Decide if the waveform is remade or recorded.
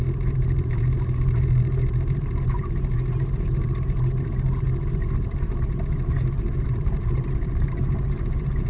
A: remade